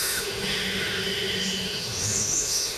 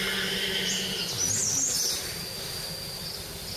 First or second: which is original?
second